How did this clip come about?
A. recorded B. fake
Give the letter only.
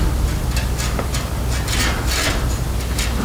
A